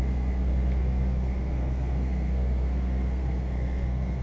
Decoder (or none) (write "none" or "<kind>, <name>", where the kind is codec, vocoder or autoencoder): codec, SNAC